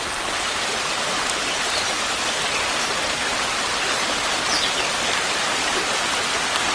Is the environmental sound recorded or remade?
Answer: remade